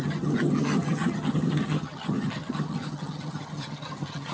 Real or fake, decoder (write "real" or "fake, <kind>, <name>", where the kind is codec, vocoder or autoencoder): fake, vocoder, HiFi-GAN